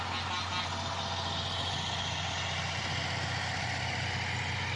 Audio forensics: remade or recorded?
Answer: recorded